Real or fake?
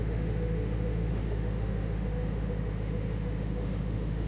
fake